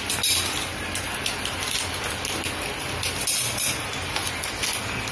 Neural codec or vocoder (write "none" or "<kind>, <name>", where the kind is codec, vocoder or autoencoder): none